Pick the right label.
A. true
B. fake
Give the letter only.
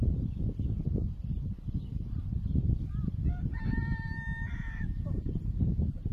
A